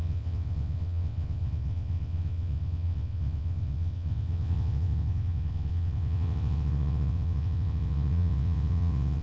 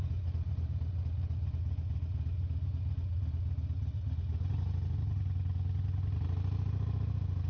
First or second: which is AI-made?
first